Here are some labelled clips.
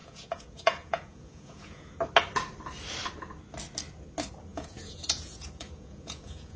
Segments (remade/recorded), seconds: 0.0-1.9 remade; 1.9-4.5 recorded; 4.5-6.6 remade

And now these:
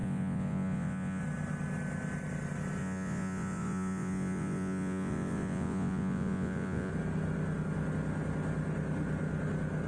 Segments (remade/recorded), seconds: 0.0-1.2 remade; 1.2-2.8 recorded; 2.8-6.9 remade; 6.9-9.9 recorded